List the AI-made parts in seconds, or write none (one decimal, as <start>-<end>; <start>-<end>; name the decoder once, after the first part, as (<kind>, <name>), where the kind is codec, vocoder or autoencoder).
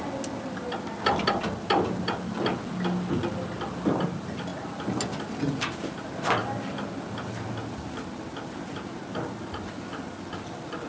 none